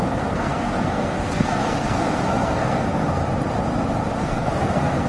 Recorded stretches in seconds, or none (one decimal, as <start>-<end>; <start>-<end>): 3.2-4.2

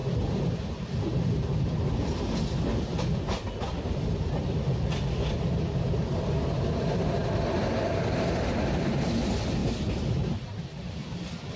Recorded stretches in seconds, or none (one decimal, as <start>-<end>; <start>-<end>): 2.2-11.6

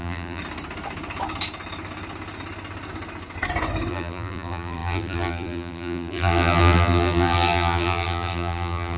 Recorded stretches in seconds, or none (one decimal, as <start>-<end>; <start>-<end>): 0.4-3.9

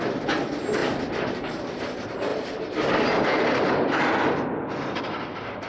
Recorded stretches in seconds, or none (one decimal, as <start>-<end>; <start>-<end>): 0.0-5.7

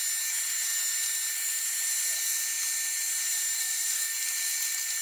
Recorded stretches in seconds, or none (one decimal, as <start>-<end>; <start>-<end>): 0.0-3.6; 4.1-5.0